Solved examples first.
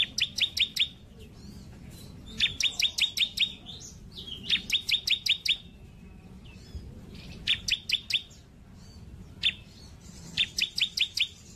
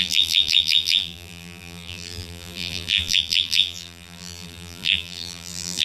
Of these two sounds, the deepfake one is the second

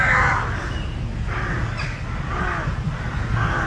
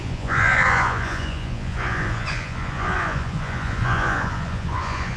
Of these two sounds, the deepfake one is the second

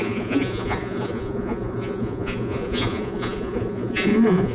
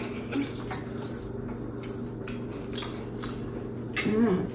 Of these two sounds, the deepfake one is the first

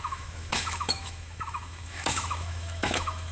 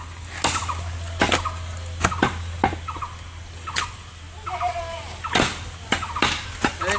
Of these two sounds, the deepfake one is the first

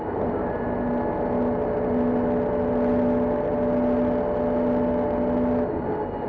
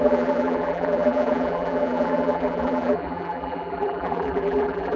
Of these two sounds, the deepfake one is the second